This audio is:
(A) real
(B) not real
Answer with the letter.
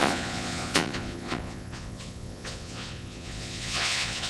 B